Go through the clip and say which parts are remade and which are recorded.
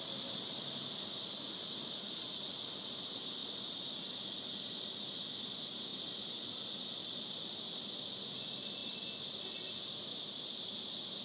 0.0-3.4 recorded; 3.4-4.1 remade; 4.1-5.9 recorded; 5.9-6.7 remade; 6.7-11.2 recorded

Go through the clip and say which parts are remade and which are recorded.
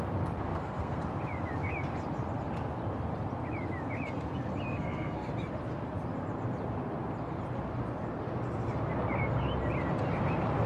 0.0-0.5 recorded; 0.5-1.0 remade; 1.0-4.7 recorded; 4.7-5.3 remade; 5.3-10.7 recorded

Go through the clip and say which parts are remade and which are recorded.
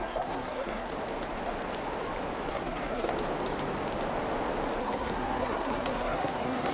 0.0-0.9 remade; 0.9-2.5 recorded; 2.5-3.1 remade; 3.1-4.8 recorded; 4.8-6.7 remade